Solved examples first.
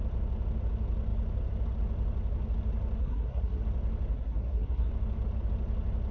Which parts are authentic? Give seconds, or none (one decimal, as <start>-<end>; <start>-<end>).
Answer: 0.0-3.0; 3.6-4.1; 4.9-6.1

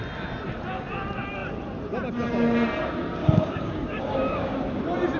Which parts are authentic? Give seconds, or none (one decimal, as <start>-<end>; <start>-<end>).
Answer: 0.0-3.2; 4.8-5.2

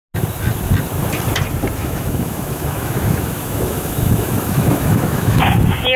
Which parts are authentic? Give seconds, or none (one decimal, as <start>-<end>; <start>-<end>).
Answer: 0.0-1.8; 5.4-6.0

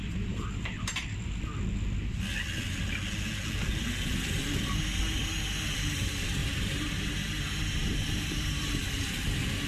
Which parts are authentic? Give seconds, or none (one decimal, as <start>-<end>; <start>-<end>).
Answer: 1.0-6.4; 7.1-7.8; 8.8-9.7